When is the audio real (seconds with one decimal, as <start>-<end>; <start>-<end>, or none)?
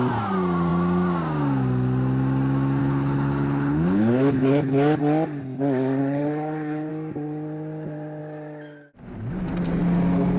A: 0.0-2.8; 5.0-6.0; 6.9-10.4